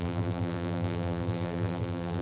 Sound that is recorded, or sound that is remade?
remade